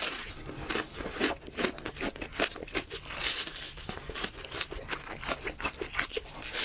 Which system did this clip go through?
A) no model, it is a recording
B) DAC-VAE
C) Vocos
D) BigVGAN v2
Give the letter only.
A